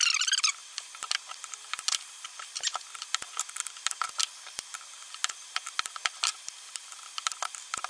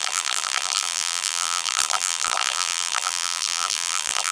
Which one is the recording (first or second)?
first